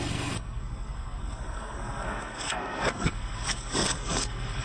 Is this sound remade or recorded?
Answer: remade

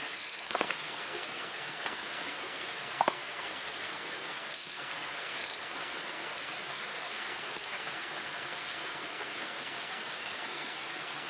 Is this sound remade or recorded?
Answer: remade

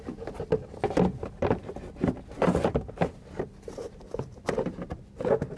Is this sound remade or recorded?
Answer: recorded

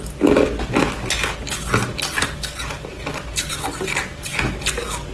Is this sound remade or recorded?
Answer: recorded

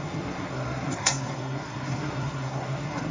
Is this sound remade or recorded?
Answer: remade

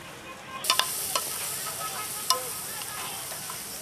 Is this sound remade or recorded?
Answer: recorded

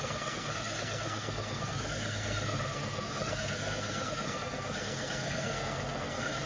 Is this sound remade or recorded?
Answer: remade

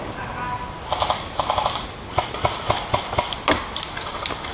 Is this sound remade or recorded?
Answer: recorded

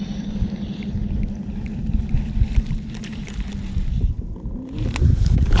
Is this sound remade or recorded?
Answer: recorded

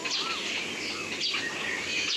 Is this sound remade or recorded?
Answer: recorded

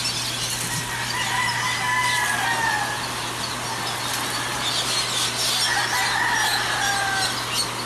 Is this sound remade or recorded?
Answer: recorded